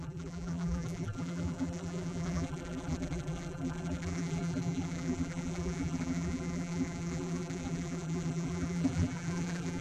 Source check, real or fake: fake